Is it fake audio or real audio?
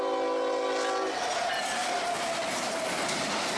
real